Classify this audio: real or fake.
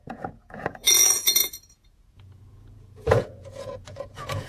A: fake